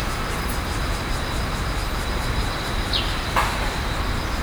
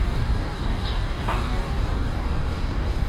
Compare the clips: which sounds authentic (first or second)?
first